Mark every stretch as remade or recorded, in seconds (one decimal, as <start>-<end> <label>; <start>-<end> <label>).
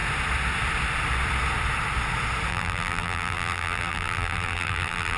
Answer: 0.0-2.5 recorded; 2.5-5.2 remade